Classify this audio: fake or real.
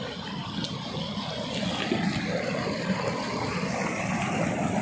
real